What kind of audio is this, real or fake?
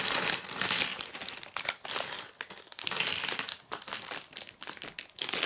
real